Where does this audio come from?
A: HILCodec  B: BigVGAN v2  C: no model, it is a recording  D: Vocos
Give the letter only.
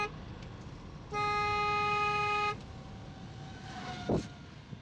C